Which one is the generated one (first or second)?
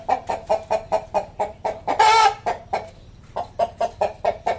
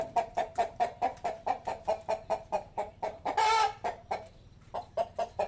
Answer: second